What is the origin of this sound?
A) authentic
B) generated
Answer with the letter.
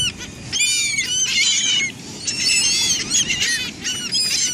A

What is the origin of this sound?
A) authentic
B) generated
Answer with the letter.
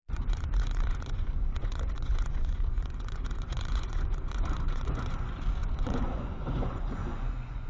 B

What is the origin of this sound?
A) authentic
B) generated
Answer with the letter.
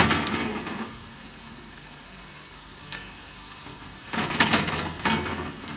B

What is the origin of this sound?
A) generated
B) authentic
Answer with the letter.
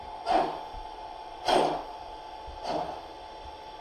B